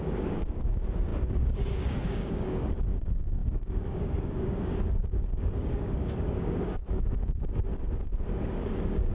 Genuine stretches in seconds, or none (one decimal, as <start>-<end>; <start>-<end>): 7.7-8.4